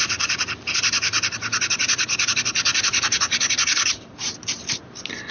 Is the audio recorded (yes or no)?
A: yes